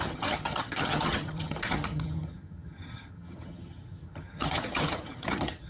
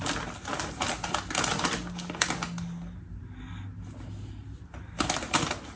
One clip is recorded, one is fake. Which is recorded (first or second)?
second